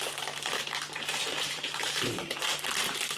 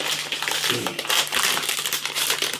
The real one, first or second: second